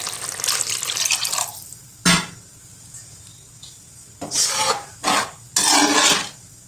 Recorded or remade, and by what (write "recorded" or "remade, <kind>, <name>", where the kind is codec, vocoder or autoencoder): recorded